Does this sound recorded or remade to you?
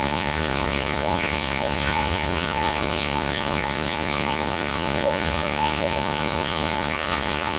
remade